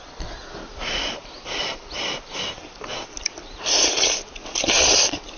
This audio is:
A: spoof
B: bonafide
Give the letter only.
B